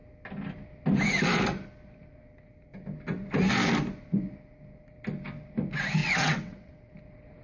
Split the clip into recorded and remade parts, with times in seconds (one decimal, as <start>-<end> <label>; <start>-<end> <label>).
0.0-6.0 recorded; 6.0-6.9 remade; 6.9-7.4 recorded